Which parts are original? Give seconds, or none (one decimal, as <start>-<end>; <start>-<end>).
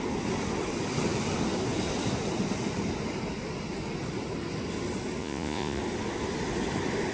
0.0-5.2; 5.8-7.1